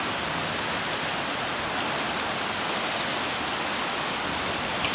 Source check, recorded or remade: recorded